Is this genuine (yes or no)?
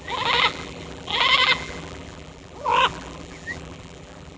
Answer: no